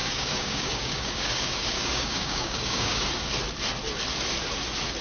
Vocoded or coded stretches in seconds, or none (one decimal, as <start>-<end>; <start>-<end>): 0.0-3.0

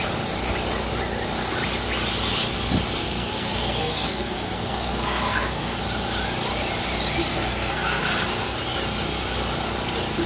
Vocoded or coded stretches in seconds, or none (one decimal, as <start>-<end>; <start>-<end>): 3.0-5.8; 7.3-8.0